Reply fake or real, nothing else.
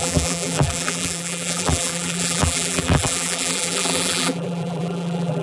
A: fake